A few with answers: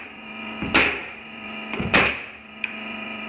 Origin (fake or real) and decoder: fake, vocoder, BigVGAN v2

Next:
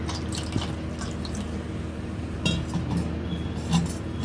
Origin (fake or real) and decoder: real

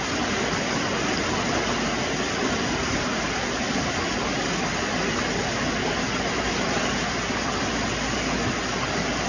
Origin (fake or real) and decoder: real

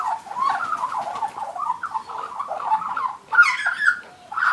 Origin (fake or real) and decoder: real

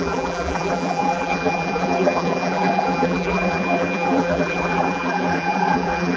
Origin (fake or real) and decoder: fake, vocoder, BigVGAN v2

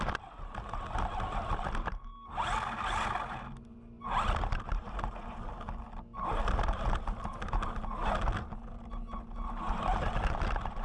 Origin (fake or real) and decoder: real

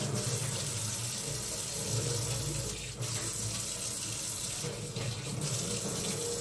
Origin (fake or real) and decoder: real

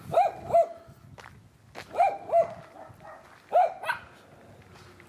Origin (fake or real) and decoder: real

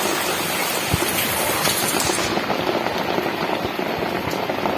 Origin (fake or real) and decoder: real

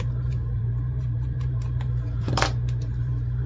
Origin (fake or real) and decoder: fake, vocoder, BigVGAN v2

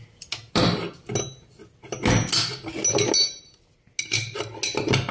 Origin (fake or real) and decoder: real